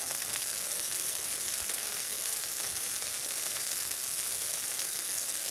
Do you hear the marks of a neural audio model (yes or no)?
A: yes